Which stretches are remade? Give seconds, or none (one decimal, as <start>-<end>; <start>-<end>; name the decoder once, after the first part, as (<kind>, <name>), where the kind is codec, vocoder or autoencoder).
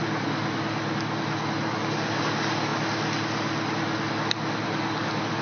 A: none